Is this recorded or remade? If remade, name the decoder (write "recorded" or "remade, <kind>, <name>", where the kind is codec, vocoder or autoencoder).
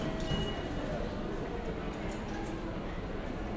recorded